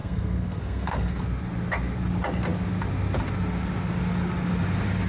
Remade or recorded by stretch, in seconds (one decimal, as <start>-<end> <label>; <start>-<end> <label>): 0.0-1.2 remade; 1.2-5.1 recorded